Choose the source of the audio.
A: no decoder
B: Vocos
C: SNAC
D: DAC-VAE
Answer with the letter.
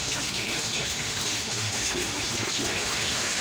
D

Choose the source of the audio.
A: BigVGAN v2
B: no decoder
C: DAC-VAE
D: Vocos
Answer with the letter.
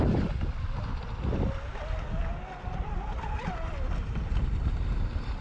B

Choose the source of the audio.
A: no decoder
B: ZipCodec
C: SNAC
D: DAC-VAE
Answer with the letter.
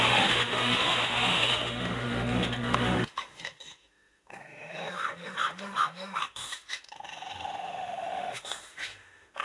D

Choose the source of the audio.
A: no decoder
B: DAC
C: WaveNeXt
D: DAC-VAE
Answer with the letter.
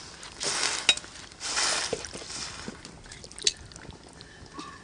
A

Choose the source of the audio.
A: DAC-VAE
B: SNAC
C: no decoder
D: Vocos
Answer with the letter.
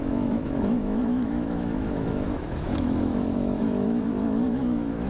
A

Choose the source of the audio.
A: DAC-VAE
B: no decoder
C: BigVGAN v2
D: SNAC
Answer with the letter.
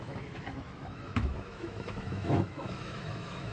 A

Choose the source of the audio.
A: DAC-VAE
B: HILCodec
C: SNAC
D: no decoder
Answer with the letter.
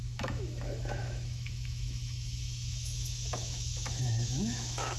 A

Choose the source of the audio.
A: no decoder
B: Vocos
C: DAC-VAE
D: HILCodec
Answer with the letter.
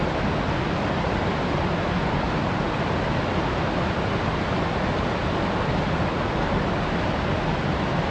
A